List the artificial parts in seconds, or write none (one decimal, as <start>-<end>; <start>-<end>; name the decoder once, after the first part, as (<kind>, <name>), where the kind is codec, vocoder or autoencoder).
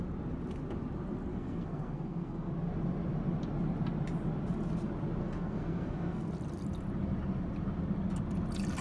1.3-2.5 (codec, SNAC); 5.2-6.3